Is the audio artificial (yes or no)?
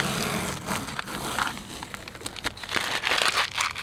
no